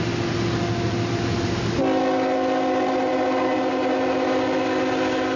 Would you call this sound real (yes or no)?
yes